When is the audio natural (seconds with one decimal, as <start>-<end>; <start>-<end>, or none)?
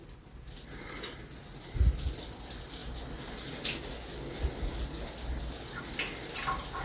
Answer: 0.0-6.8